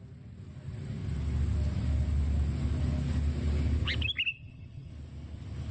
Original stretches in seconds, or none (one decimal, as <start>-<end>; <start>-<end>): 0.0-4.3; 4.9-5.7